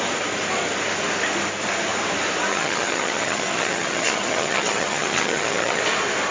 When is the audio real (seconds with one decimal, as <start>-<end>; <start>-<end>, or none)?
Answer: 0.0-2.5; 5.8-6.3